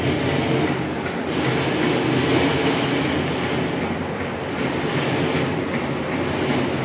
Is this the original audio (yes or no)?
yes